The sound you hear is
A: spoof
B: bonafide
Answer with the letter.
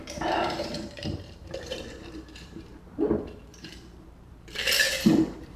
A